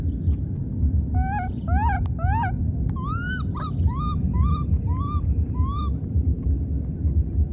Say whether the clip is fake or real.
real